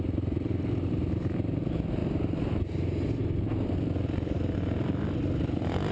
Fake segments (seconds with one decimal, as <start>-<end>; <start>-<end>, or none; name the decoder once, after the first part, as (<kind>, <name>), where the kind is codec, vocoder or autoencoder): none